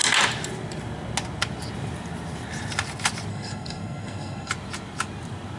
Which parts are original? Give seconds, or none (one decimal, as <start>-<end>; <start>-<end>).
0.0-3.3; 4.5-5.6